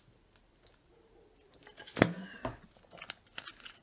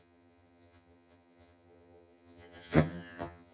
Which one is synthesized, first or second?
second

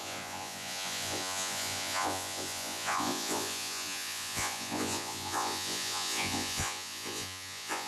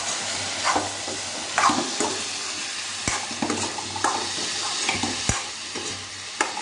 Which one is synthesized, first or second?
first